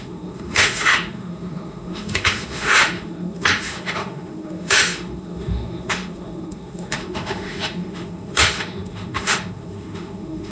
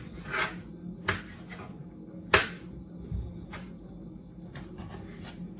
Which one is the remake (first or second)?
first